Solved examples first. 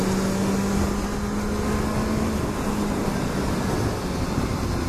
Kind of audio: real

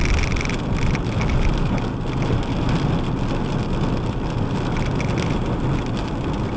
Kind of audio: real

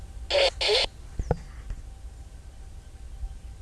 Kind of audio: real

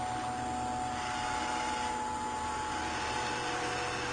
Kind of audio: real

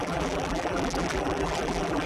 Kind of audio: fake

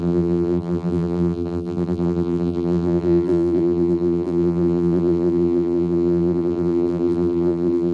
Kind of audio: fake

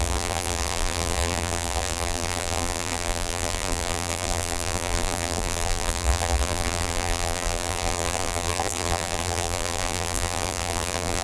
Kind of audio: fake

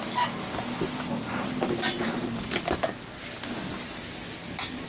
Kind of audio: real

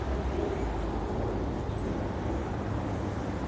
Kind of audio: real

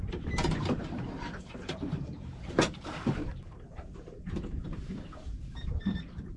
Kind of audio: fake